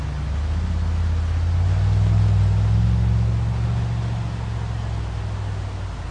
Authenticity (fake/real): real